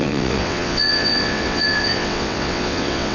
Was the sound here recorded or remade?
remade